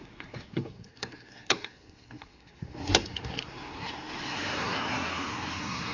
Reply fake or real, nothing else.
fake